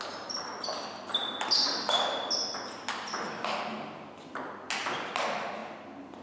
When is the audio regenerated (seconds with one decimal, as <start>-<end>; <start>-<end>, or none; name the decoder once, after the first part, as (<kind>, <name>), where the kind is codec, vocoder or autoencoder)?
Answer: none